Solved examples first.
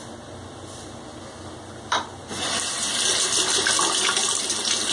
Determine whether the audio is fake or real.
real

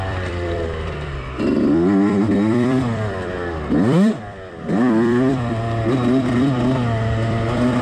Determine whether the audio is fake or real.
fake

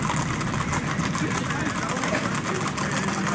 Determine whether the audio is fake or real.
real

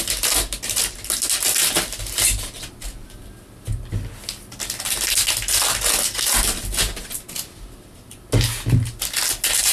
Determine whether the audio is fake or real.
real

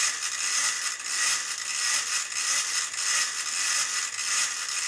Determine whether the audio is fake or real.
real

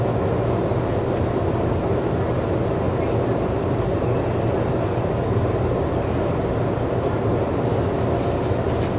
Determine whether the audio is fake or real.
real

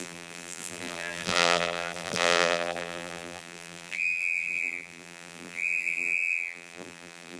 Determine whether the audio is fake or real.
fake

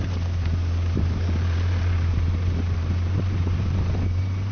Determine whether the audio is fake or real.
fake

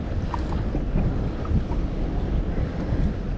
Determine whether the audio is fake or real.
real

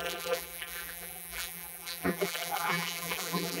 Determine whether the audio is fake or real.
fake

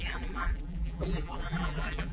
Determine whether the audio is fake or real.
fake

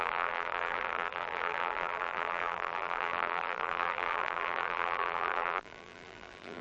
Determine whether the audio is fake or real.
fake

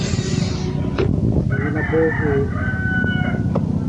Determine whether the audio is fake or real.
real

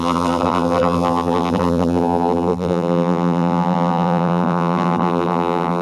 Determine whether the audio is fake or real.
fake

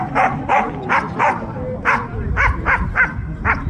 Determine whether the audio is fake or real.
fake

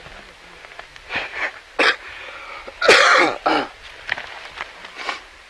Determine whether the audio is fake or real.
real